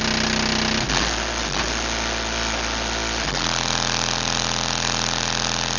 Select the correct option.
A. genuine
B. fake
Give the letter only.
A